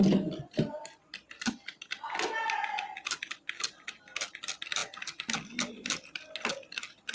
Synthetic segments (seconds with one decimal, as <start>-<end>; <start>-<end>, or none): none